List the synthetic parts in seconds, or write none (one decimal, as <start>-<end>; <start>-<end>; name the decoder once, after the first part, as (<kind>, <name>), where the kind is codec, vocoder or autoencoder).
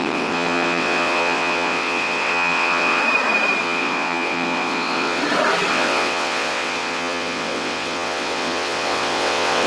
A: 0.0-3.0 (vocoder, WaveNeXt); 3.6-5.2; 5.7-9.7